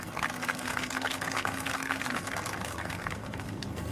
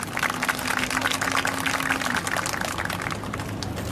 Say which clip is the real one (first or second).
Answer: second